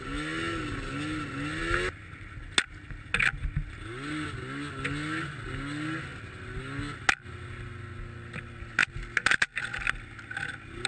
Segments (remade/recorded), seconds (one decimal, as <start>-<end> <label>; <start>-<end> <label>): 0.0-10.9 recorded